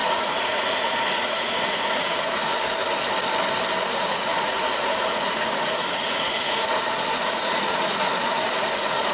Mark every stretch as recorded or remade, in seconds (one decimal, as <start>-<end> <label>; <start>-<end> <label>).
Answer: 0.0-2.5 remade; 2.5-3.9 recorded; 3.9-9.1 remade